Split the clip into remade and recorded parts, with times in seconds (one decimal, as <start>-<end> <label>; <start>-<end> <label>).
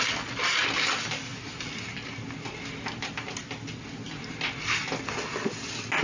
0.0-6.0 recorded